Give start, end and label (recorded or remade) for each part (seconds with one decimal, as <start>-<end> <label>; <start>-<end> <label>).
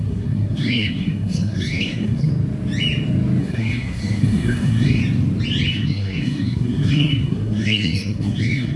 0.0-2.3 remade; 2.3-3.4 recorded; 3.4-5.0 remade; 5.0-5.7 recorded; 5.7-8.8 remade